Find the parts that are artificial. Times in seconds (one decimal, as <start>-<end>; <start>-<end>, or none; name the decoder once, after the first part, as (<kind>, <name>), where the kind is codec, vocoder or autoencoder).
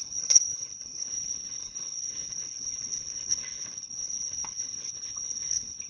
0.0-5.9 (codec, HILCodec)